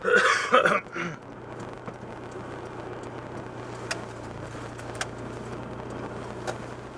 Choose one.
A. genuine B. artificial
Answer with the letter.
A